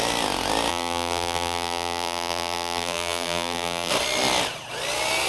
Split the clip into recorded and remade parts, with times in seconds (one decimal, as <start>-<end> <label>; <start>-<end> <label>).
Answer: 0.0-0.7 recorded; 0.7-3.9 remade; 3.9-5.3 recorded